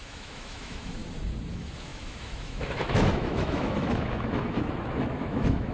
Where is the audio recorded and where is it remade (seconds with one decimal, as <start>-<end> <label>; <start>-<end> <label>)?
0.0-1.0 remade; 1.0-1.5 recorded; 1.5-5.7 remade